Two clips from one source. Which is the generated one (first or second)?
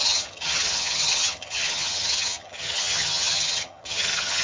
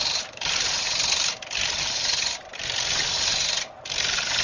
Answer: first